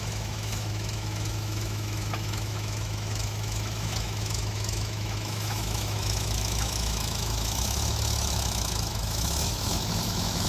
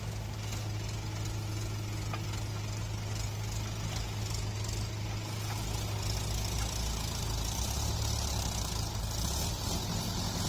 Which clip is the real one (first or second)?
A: second